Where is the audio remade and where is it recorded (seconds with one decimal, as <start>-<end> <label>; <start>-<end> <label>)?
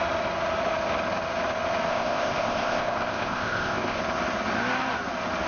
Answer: 0.0-1.9 recorded; 1.9-4.0 remade; 4.0-5.5 recorded